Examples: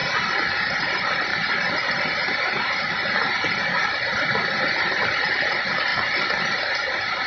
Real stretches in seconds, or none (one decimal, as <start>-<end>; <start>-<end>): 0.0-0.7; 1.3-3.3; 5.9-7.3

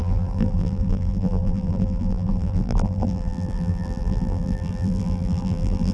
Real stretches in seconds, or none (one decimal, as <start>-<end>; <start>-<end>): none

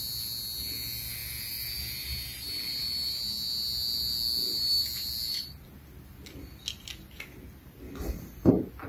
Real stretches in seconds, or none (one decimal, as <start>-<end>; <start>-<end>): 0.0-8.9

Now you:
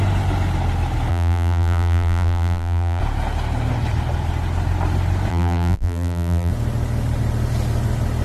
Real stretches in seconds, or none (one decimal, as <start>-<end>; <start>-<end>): 0.0-1.1; 3.0-5.3; 6.5-8.2

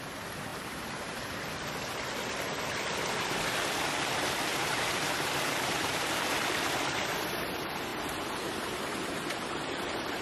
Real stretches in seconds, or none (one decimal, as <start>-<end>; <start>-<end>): 0.0-0.5; 1.4-4.5; 6.2-7.9; 8.8-10.2

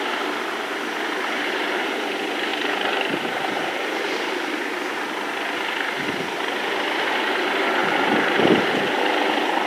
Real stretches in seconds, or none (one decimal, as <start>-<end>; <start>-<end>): 0.0-2.5; 4.5-9.7

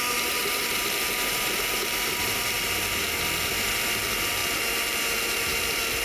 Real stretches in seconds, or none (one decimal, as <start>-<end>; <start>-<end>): 0.0-6.0